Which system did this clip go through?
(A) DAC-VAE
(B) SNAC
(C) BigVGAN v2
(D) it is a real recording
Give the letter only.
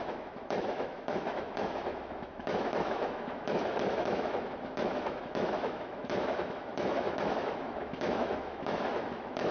A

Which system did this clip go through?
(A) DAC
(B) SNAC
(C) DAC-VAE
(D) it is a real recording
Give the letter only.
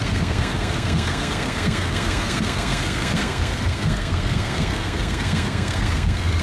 B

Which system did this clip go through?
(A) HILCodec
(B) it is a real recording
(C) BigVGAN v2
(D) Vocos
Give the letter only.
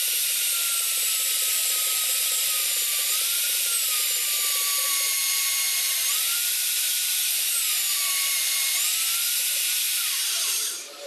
C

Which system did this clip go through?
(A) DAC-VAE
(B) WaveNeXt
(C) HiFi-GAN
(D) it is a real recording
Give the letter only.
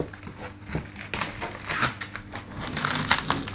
D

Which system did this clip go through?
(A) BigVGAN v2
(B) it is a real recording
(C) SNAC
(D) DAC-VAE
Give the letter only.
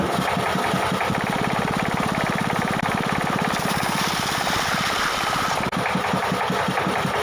B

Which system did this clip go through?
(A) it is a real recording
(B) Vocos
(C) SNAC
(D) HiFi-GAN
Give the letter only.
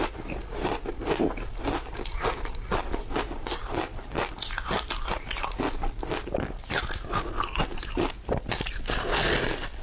A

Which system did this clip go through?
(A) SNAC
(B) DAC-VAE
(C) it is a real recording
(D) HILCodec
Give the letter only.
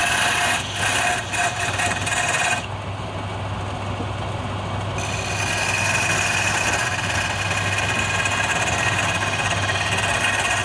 C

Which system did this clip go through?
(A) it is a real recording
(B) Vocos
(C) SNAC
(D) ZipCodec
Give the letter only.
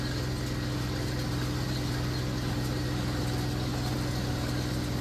A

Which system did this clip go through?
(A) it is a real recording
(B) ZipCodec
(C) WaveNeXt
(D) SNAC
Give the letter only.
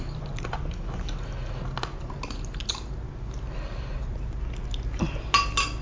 A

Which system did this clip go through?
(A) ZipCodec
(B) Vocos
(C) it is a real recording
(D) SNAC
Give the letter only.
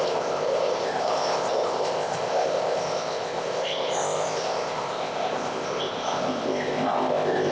A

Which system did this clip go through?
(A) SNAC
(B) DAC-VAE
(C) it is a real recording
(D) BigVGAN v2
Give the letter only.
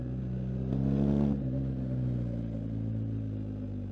C